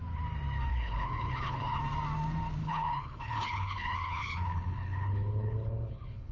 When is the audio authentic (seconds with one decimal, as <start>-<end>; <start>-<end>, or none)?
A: 0.0-0.7; 1.8-2.6